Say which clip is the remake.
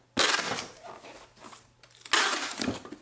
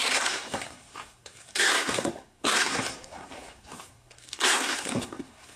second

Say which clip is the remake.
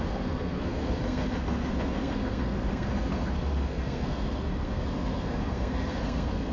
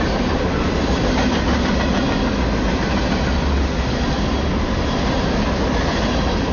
first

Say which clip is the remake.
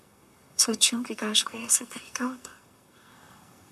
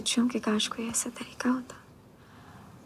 first